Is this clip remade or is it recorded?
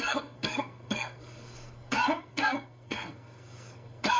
remade